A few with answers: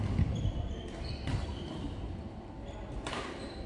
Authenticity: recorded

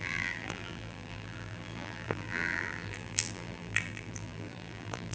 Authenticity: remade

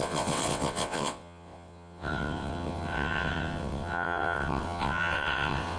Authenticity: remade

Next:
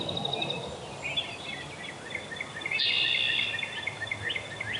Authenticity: recorded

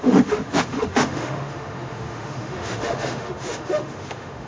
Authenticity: remade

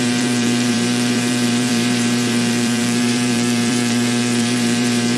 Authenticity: remade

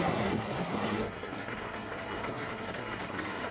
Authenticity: remade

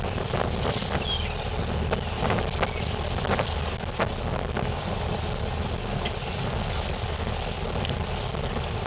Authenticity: recorded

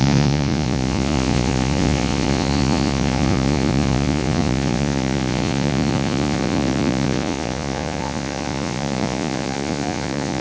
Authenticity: remade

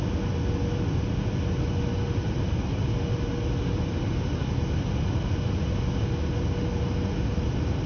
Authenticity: recorded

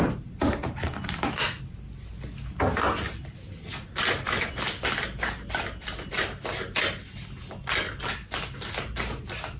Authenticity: recorded